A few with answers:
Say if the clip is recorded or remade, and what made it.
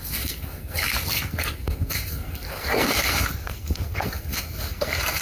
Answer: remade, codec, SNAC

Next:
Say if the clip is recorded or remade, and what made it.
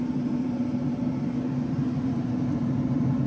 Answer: remade, vocoder, BigVGAN v2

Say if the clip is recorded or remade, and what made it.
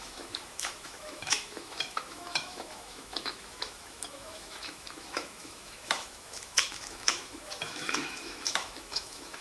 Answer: remade, autoencoder, DAC-VAE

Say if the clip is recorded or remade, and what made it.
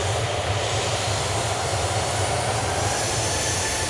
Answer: recorded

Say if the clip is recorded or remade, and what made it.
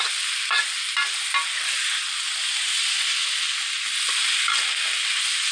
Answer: recorded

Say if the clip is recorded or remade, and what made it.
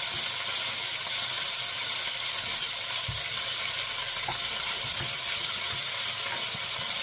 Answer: remade, vocoder, BigVGAN v2